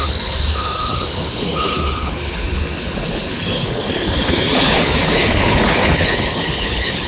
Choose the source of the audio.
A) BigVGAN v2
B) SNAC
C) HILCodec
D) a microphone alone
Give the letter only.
C